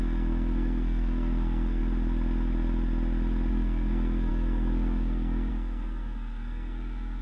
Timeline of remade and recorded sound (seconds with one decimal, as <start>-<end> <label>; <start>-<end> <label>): 0.0-1.8 remade; 1.8-3.5 recorded; 3.5-7.2 remade